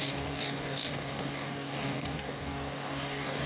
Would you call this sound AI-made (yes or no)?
yes